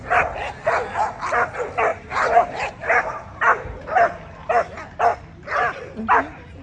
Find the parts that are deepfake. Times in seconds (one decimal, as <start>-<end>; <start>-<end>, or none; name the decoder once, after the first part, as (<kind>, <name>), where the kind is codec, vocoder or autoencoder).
1.9-3.2 (vocoder, BigVGAN v2)

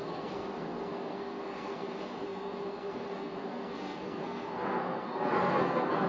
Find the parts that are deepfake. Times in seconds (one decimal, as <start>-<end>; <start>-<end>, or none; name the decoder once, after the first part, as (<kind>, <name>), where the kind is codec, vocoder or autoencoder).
0.0-6.1 (codec, SNAC)